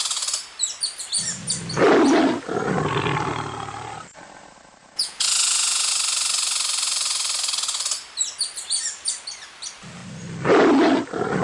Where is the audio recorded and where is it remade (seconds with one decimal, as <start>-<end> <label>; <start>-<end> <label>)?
0.0-4.8 recorded; 4.8-5.9 remade; 5.9-11.4 recorded